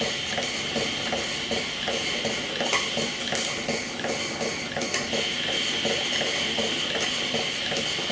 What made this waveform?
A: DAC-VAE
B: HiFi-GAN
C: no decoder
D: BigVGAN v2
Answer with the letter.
C